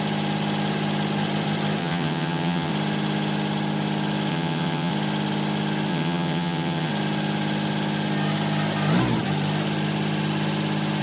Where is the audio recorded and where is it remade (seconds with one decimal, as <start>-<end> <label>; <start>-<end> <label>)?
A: 0.0-1.8 recorded; 1.8-2.7 remade; 2.7-4.3 recorded; 4.3-4.9 remade; 4.9-5.9 recorded; 5.9-6.9 remade; 6.9-11.0 recorded